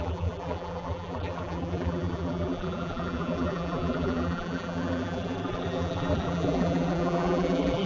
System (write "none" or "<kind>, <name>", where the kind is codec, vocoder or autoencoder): vocoder, BigVGAN v2